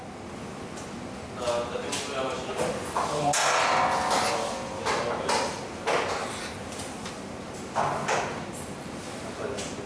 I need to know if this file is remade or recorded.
recorded